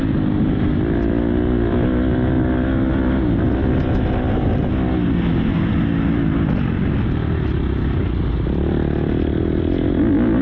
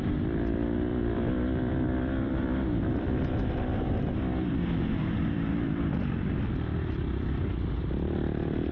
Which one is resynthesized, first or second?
second